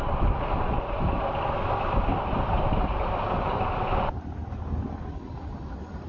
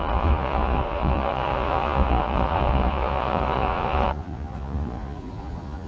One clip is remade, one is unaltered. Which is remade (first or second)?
second